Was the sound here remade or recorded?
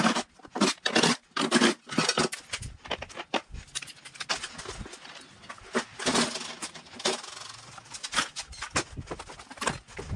recorded